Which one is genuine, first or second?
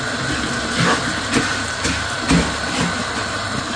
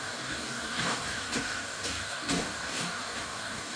first